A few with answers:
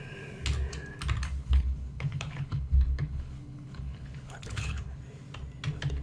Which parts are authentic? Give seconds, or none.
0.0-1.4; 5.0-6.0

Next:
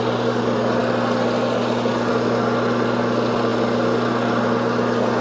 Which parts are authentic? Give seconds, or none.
0.0-5.2

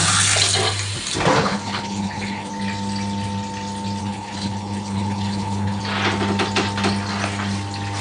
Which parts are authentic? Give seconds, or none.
0.0-1.4; 2.5-4.0; 5.8-8.0

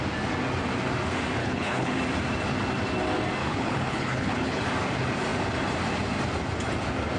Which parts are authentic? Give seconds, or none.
0.0-1.4; 2.0-3.4; 4.6-7.2

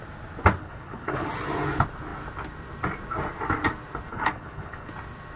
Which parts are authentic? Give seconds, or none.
0.0-0.6; 1.3-4.1; 4.9-5.4

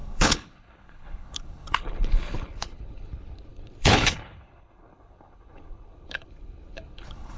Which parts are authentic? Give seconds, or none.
none

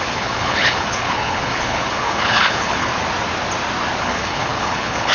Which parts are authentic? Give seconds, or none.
2.9-4.0

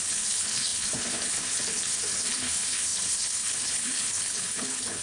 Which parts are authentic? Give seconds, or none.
none